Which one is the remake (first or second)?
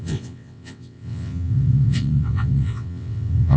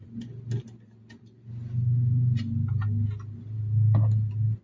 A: first